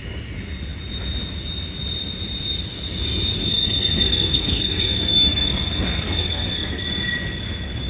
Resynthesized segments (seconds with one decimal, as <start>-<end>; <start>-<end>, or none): 3.5-6.8